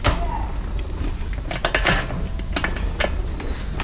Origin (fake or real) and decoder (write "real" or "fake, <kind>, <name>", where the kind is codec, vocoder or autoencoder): real